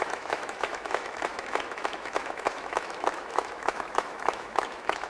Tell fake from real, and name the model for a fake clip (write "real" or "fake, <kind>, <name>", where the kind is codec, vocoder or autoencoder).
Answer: fake, autoencoder, DAC-VAE